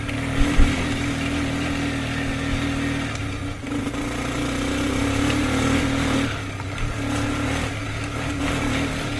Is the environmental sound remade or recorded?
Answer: recorded